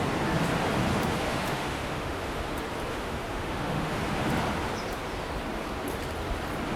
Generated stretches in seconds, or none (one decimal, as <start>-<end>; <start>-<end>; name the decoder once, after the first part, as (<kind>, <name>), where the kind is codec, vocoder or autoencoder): 0.9-2.5 (autoencoder, DAC-VAE); 2.9-4.3